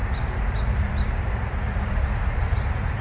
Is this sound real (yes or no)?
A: no